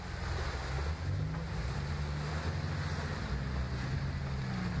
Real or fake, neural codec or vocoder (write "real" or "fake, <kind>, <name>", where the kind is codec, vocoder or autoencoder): real